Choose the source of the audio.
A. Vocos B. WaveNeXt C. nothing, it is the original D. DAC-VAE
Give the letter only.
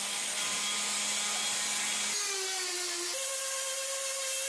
C